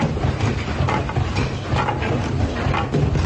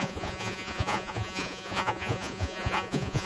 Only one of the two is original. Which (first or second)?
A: first